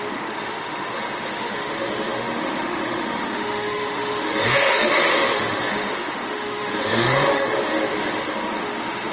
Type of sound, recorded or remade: remade